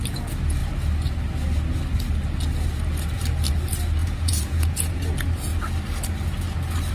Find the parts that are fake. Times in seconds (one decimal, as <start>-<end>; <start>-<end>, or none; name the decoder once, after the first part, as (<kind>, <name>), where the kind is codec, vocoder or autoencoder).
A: 4.0-5.1 (vocoder, Vocos)